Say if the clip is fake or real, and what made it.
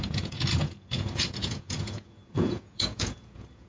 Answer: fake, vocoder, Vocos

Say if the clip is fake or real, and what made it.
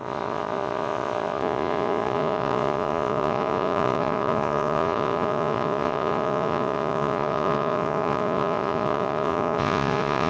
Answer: fake, vocoder, Vocos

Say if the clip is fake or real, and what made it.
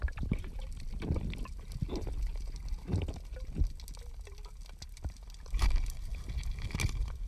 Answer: real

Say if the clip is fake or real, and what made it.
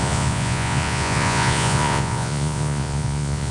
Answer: fake, vocoder, Vocos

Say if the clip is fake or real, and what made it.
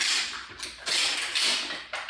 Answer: real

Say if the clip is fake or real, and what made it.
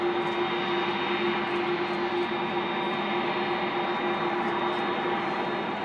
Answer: real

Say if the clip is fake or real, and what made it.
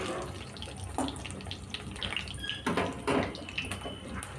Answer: real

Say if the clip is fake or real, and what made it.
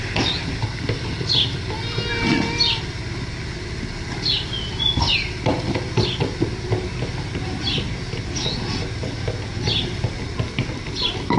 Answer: real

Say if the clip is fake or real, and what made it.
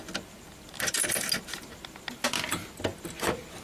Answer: real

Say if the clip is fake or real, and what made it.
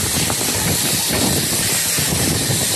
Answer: real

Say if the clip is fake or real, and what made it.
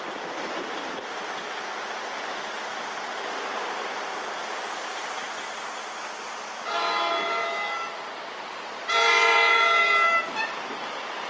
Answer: real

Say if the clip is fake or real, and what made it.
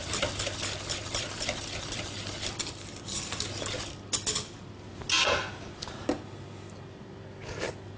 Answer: real